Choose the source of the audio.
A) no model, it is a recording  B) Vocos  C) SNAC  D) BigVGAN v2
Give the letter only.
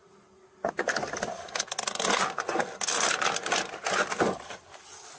A